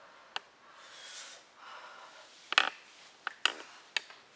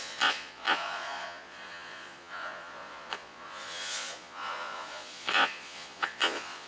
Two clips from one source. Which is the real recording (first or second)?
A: first